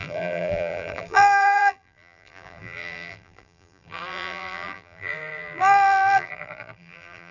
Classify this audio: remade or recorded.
remade